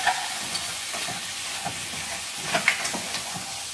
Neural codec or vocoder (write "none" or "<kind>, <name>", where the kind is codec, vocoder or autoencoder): vocoder, Vocos